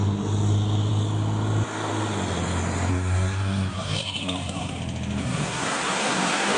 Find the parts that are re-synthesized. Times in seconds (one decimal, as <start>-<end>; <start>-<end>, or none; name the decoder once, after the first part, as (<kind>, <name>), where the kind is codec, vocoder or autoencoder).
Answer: 2.9-4.8 (codec, SNAC); 5.2-6.6